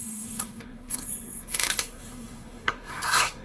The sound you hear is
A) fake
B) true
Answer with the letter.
A